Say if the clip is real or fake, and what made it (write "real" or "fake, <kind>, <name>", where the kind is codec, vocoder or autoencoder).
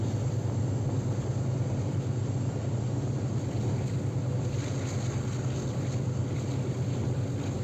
real